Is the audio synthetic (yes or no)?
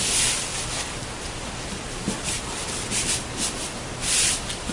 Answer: no